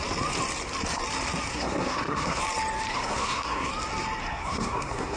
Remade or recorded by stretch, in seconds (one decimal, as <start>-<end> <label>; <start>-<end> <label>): 0.0-1.5 recorded; 1.5-2.4 remade; 2.4-2.9 recorded; 2.9-3.7 remade; 3.7-4.2 recorded; 4.2-5.2 remade